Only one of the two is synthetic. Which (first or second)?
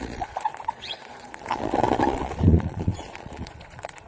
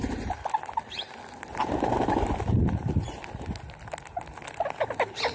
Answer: first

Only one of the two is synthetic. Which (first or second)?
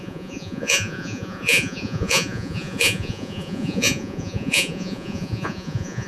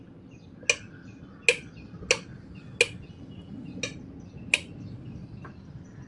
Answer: first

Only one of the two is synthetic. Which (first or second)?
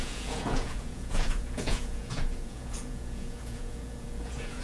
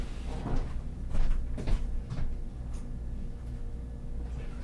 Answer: first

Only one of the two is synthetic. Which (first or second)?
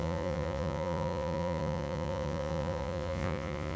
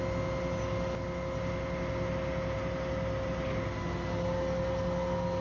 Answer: first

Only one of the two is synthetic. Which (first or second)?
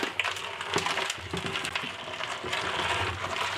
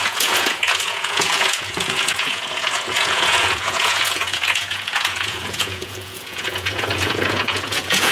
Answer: second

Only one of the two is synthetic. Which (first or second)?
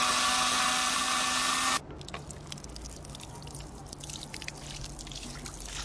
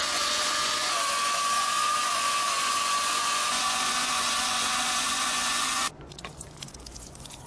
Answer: second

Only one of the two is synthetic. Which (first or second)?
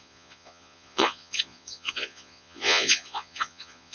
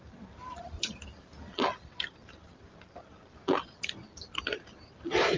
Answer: first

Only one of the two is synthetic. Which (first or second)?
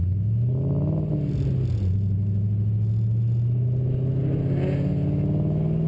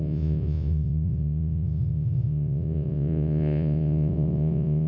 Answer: second